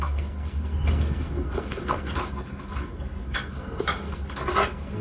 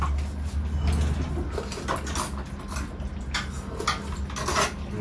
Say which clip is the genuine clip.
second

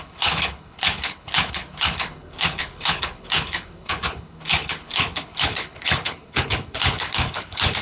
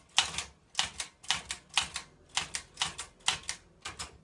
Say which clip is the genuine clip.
second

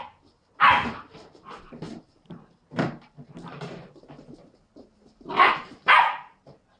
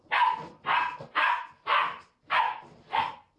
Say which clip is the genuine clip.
second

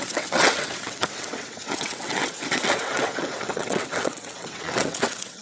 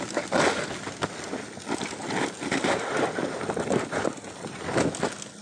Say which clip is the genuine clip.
second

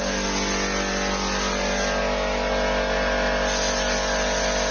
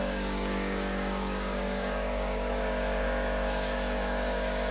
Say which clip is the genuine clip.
first